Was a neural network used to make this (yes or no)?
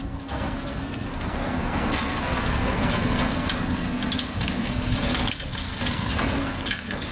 yes